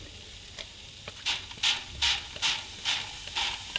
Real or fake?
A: real